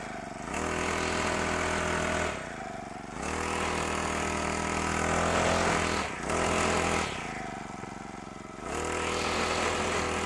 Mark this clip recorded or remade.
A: recorded